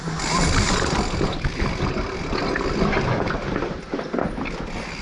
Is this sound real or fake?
real